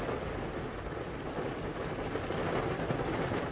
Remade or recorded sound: recorded